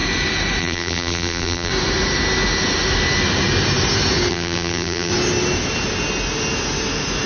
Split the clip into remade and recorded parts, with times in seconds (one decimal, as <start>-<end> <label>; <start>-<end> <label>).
0.0-0.6 recorded; 0.6-1.7 remade; 1.7-4.3 recorded; 4.3-5.1 remade; 5.1-7.3 recorded